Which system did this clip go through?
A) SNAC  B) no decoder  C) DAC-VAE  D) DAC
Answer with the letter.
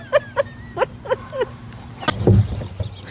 B